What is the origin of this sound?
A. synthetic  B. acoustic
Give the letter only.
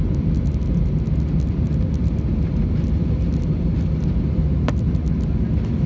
B